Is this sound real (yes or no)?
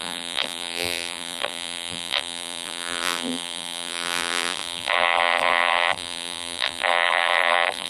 no